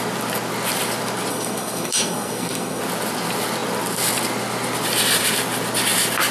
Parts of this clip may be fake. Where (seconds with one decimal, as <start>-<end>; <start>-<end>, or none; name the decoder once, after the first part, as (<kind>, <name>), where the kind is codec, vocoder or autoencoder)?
1.3-2.8 (codec, SNAC)